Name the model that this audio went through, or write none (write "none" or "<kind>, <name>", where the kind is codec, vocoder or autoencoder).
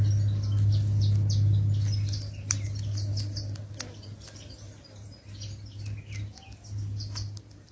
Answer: none